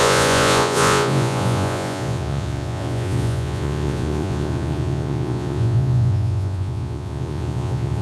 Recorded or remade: remade